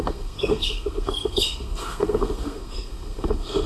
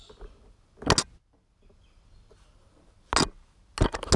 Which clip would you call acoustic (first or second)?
second